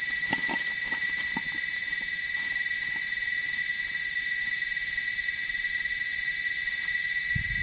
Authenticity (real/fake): real